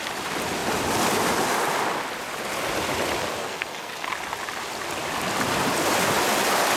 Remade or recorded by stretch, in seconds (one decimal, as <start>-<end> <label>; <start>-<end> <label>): 0.0-3.4 recorded; 3.4-4.1 remade; 4.1-6.8 recorded